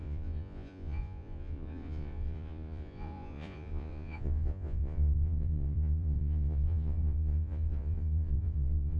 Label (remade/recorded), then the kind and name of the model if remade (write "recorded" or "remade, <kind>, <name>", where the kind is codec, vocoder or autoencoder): remade, vocoder, Vocos